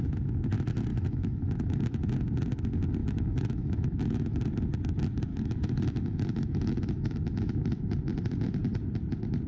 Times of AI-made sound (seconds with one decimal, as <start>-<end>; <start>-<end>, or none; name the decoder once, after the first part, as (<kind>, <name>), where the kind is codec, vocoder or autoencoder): 0.9-2.0 (autoencoder, DAC-VAE); 3.0-4.4; 5.3-8.1